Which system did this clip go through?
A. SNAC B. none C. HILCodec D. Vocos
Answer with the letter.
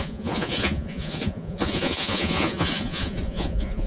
D